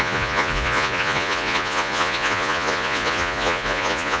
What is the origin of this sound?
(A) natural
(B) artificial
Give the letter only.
B